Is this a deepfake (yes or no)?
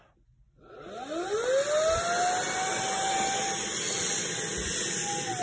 no